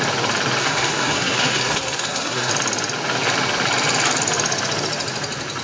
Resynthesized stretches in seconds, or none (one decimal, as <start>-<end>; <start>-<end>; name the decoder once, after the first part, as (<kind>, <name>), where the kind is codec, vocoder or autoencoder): 0.6-2.5 (codec, SNAC)